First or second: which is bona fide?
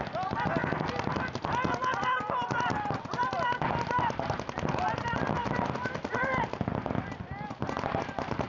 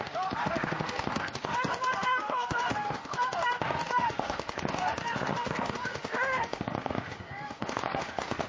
first